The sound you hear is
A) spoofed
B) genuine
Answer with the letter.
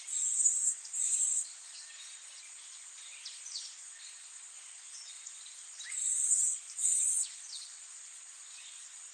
A